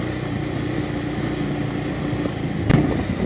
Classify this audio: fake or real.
real